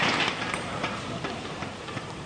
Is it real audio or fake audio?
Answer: fake